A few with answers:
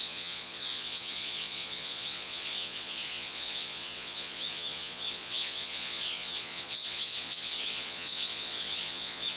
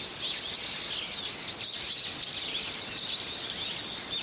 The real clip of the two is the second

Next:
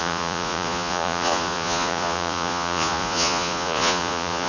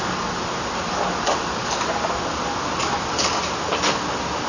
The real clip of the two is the second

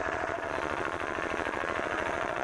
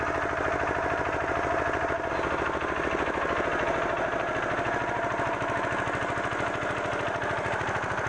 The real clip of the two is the second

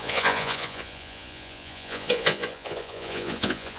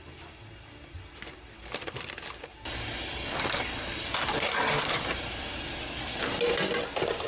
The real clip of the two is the second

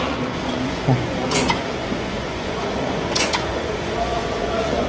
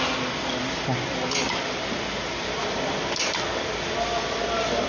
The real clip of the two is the second